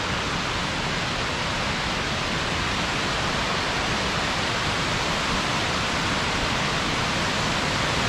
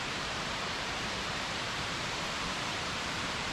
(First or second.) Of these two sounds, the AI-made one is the second